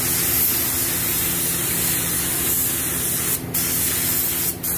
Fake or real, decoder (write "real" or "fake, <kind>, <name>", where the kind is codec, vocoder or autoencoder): real